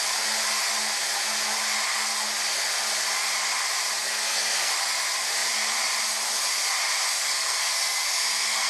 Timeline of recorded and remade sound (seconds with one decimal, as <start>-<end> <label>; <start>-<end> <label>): 0.0-4.0 recorded; 4.0-4.7 remade; 4.7-7.2 recorded; 7.2-8.7 remade